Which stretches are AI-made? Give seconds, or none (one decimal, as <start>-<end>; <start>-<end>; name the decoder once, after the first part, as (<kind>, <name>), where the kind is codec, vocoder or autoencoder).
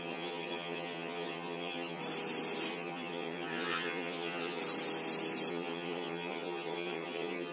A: 0.0-2.0 (vocoder, HiFi-GAN); 2.7-4.6; 5.5-7.5